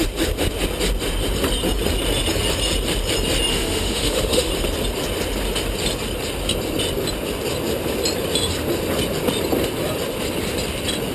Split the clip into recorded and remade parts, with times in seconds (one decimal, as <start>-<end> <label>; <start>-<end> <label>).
0.0-3.5 recorded; 3.5-4.5 remade; 4.5-11.1 recorded